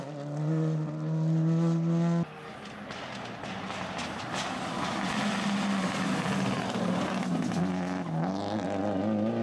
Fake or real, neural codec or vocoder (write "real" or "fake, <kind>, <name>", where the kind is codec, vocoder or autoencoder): real